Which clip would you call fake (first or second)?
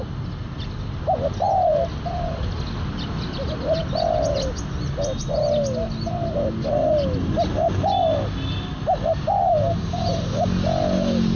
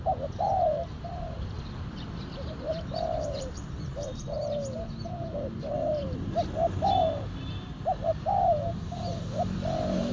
second